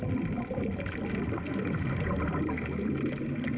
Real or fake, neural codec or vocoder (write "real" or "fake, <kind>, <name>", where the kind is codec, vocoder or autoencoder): real